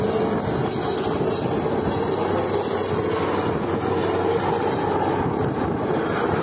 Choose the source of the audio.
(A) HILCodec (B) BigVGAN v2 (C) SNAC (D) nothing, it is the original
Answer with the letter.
D